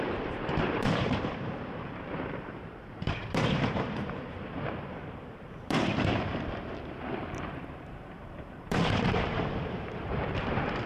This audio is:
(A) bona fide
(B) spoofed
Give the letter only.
B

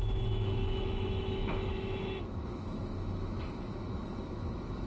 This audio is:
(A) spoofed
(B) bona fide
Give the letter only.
A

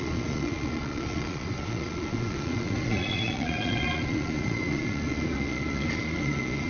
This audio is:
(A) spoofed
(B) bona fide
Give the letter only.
A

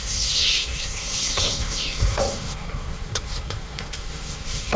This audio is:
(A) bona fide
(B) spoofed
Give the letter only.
B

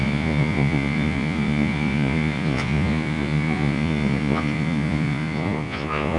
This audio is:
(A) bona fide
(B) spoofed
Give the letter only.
B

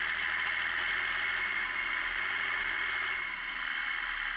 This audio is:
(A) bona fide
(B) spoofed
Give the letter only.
A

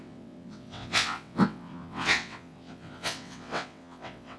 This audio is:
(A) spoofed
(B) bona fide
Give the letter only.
A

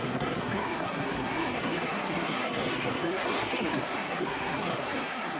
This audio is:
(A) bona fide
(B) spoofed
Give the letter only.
B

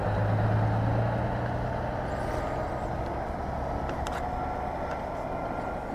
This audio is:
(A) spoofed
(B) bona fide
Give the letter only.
B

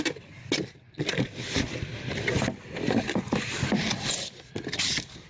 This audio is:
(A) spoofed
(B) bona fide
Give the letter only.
B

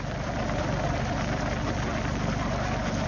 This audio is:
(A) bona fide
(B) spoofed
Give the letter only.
A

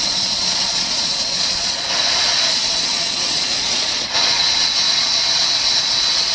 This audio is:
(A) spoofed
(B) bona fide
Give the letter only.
A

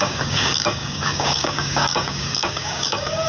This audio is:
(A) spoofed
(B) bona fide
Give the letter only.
A